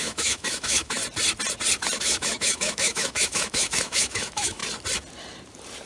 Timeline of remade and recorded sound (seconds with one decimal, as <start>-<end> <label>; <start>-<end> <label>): 0.0-1.0 remade; 1.0-2.0 recorded; 2.0-4.6 remade; 4.6-5.9 recorded